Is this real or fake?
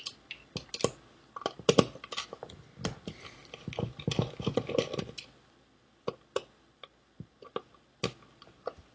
real